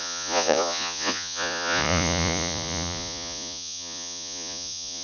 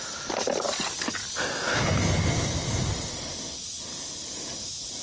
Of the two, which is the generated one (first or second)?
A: first